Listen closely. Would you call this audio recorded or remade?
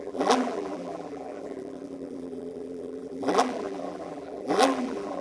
remade